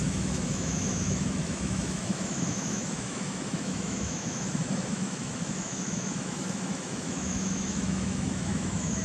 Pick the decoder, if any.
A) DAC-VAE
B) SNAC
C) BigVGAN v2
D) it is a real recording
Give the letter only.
A